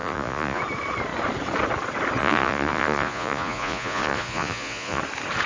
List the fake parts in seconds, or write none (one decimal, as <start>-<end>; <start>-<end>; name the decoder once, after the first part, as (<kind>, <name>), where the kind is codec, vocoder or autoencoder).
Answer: 0.0-0.6 (vocoder, Vocos); 2.2-5.0